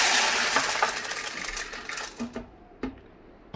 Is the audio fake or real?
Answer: real